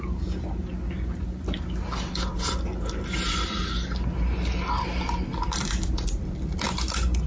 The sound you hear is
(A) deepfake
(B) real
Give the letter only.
B